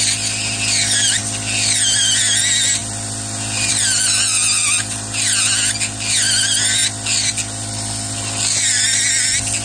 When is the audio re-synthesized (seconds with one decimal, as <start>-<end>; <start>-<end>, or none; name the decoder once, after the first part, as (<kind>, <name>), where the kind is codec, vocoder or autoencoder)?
none